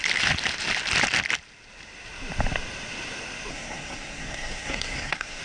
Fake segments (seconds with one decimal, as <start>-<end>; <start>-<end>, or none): 3.5-5.4